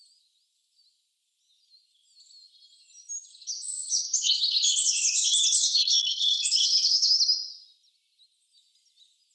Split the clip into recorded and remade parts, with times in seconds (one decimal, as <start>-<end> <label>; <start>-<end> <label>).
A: 0.0-3.3 recorded; 3.3-7.2 remade; 7.2-9.3 recorded